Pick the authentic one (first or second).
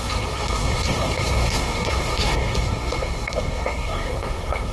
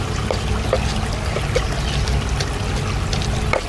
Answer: second